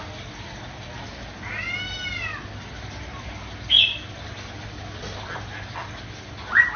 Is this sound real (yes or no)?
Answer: yes